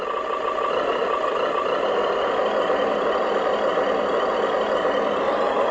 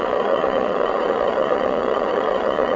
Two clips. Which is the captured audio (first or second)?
first